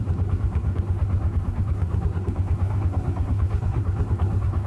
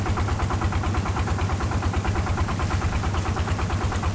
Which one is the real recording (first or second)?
second